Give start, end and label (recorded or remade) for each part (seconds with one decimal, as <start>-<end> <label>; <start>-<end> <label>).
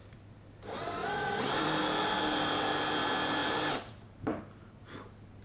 0.0-1.0 recorded; 1.0-1.8 remade; 1.8-3.4 recorded; 3.4-4.4 remade; 4.4-5.4 recorded